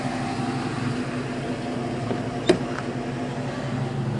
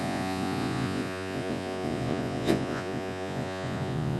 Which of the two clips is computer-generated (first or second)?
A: second